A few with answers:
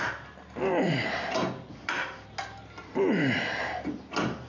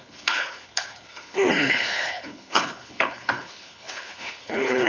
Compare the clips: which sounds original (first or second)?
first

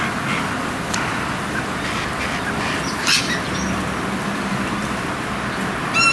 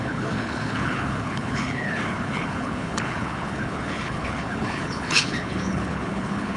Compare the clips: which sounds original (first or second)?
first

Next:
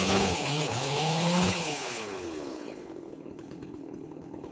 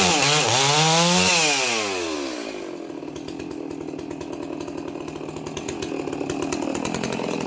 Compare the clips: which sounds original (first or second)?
second